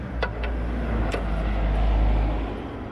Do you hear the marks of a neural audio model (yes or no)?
no